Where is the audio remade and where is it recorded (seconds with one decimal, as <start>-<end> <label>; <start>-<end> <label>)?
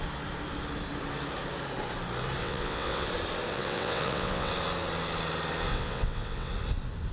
0.0-2.4 recorded; 2.4-3.1 remade; 3.1-3.5 recorded; 3.5-4.5 remade; 4.5-5.7 recorded; 5.7-6.5 remade; 6.5-7.1 recorded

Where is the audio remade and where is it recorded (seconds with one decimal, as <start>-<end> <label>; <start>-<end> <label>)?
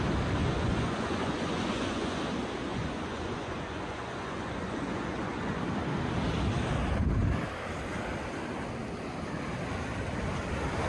0.0-0.4 recorded; 0.4-2.2 remade; 2.2-2.7 recorded; 2.7-5.6 remade; 5.6-10.9 recorded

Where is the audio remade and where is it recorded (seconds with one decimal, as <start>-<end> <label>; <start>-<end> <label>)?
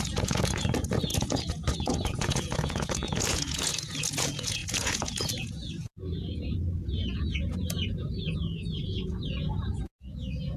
0.0-10.6 remade